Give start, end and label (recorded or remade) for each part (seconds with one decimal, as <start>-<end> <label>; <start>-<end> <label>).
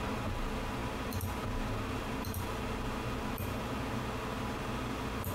0.0-5.3 recorded